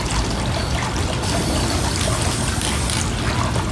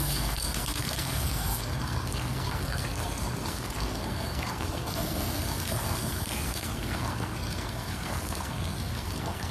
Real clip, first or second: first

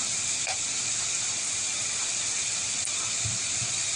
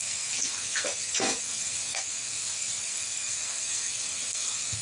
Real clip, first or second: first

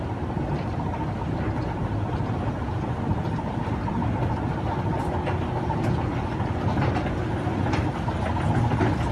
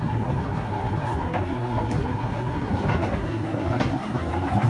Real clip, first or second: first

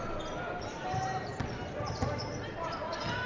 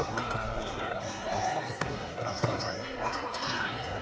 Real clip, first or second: first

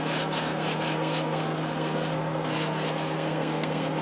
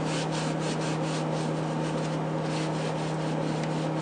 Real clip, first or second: second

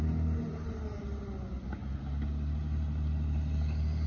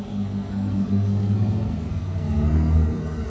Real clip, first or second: first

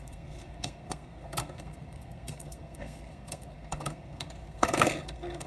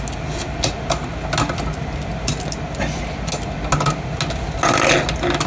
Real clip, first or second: second